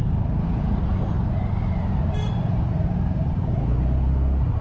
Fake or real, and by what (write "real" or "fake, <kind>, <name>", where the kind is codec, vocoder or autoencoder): real